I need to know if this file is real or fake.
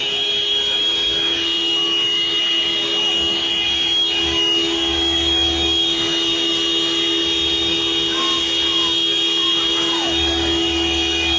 fake